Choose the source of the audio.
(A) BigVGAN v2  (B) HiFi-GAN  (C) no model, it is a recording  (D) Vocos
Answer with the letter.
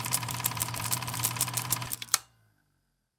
A